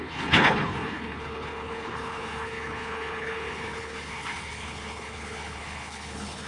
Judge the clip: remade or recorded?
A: remade